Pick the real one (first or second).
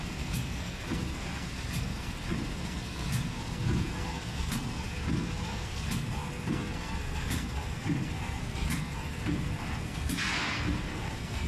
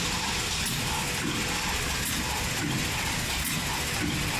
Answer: second